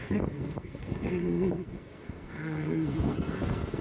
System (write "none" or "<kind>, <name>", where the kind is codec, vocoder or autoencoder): codec, SNAC